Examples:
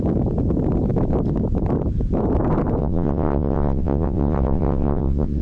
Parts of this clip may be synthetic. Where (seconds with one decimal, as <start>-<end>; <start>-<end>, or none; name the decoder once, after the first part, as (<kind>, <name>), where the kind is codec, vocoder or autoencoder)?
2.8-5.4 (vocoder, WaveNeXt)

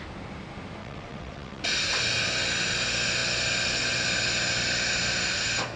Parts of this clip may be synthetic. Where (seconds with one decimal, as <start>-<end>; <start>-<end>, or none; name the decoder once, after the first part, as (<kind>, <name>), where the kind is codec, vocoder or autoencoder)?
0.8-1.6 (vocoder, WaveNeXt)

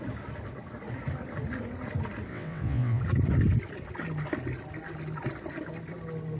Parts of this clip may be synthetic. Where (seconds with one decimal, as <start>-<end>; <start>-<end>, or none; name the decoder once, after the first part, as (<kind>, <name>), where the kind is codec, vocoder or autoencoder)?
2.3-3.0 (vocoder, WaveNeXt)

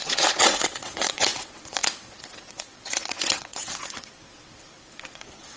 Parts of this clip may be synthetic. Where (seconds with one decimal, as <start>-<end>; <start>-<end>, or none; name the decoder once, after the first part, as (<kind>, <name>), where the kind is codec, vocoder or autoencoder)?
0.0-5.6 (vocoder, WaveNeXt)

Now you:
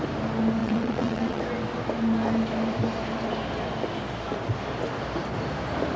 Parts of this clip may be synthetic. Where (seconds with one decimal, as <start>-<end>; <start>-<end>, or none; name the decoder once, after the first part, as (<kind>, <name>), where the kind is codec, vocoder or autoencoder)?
0.6-1.4 (vocoder, WaveNeXt)